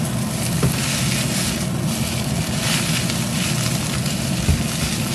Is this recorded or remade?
recorded